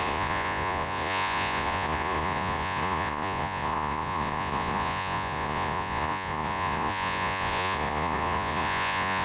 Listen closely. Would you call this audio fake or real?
fake